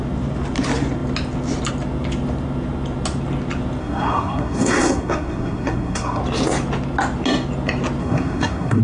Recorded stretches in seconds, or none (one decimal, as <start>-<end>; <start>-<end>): 0.0-3.8; 6.2-8.0